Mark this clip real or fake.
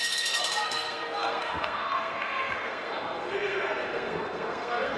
fake